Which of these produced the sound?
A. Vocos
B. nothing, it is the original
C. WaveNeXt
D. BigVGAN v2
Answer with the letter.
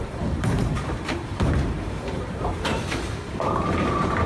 D